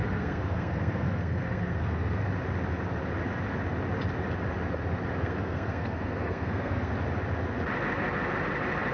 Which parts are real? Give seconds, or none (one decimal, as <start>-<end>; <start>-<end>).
2.2-5.2; 6.9-8.9